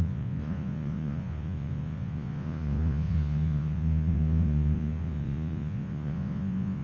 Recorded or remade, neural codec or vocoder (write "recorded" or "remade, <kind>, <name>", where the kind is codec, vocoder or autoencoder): remade, vocoder, Vocos